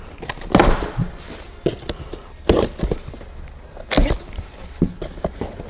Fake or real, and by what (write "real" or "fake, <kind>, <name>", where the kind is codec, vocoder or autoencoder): real